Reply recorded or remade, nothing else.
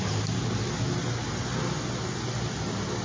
recorded